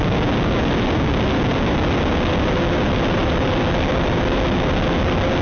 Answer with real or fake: real